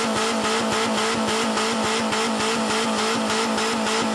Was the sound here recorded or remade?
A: recorded